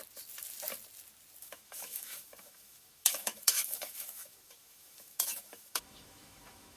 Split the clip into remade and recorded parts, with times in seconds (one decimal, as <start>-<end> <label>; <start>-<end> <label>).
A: 0.0-1.4 recorded; 1.4-6.8 remade